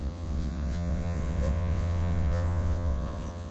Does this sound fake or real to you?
fake